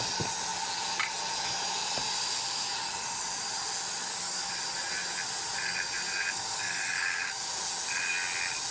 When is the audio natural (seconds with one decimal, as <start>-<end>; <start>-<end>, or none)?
0.0-4.0; 4.5-6.3; 7.5-8.7